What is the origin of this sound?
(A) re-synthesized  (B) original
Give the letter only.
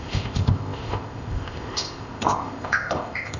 A